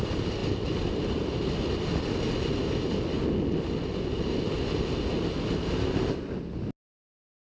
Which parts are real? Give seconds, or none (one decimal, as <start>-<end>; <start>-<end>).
0.0-7.4